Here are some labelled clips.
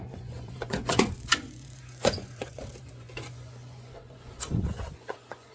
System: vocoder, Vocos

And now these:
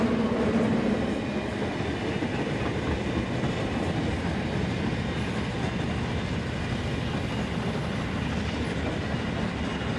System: none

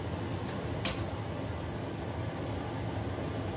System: none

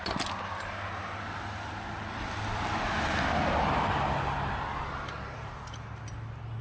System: none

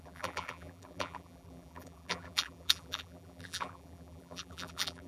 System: vocoder, BigVGAN v2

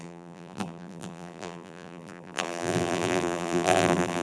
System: vocoder, BigVGAN v2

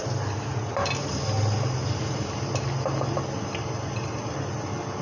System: none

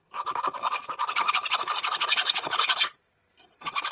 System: none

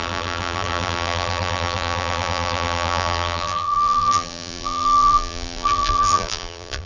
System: vocoder, BigVGAN v2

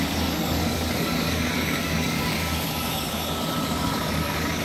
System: codec, DAC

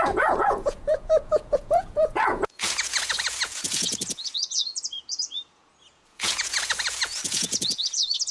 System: vocoder, Vocos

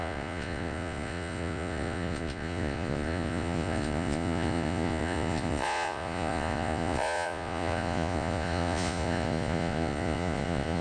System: vocoder, Vocos